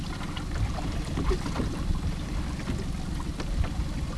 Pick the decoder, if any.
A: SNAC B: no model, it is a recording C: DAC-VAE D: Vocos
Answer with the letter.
B